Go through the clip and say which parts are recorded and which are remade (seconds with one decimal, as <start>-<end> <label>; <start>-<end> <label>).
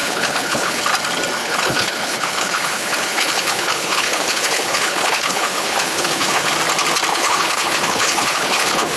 0.0-0.8 remade; 0.8-1.4 recorded; 1.4-6.5 remade; 6.5-7.1 recorded; 7.1-9.0 remade